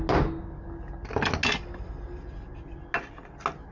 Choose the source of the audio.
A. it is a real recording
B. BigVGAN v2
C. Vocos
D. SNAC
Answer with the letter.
A